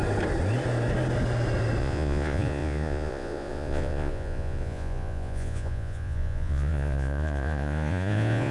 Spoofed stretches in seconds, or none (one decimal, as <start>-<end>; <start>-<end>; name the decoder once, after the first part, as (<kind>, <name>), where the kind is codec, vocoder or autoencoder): 1.8-8.5 (vocoder, Vocos)